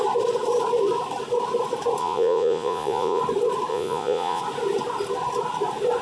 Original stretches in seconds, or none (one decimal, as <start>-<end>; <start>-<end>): 0.0-2.0; 3.2-3.7; 4.4-6.0